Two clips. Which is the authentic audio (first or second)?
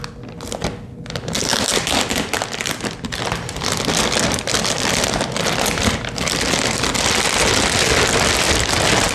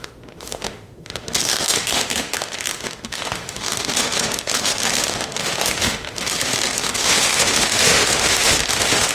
first